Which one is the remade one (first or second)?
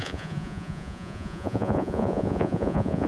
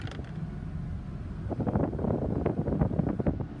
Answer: first